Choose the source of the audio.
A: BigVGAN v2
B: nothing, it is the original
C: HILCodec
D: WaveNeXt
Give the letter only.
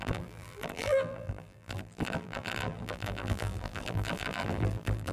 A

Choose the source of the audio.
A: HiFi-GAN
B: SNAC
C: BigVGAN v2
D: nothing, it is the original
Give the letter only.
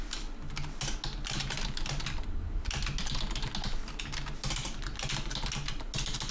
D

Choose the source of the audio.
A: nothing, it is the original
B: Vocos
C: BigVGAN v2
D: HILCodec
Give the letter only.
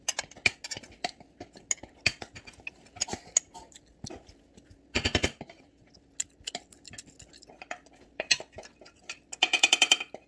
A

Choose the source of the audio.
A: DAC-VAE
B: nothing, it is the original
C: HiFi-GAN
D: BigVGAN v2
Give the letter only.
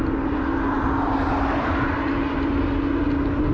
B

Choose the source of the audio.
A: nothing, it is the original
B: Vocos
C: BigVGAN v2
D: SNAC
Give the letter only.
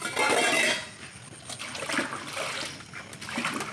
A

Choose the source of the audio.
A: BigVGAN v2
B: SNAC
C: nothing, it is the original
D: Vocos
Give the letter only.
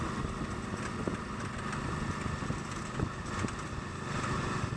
C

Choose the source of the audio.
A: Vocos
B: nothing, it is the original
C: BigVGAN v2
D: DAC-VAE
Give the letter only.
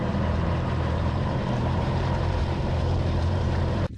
C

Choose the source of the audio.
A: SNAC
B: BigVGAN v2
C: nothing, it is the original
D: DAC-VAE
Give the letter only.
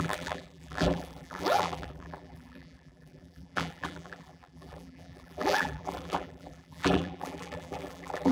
B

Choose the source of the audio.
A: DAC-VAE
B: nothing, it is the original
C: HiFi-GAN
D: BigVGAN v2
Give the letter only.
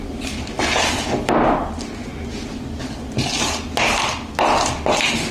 B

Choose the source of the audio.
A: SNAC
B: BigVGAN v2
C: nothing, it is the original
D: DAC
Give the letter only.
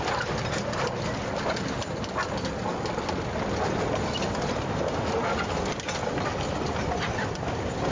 C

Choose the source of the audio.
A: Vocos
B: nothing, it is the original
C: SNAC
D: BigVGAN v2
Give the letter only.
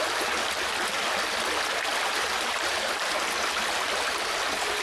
B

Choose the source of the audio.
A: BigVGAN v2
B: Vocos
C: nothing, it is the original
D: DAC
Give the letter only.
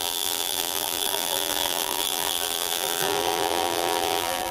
A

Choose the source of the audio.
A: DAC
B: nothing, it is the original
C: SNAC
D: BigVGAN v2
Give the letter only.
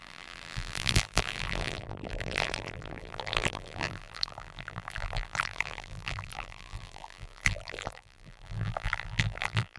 D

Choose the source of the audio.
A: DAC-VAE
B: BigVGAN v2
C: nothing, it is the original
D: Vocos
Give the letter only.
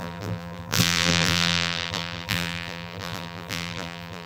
B